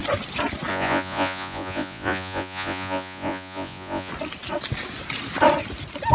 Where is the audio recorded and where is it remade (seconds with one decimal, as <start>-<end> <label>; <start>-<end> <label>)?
0.0-0.7 recorded; 0.7-4.1 remade; 4.1-6.1 recorded